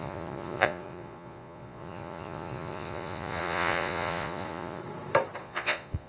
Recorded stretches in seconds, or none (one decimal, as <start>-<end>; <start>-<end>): 4.8-5.4